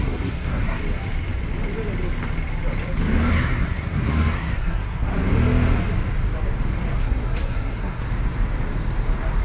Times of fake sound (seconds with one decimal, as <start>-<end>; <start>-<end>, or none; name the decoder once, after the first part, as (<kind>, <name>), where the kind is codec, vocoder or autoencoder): 0.0-0.8 (codec, SNAC); 3.3-5.1; 7.0-8.0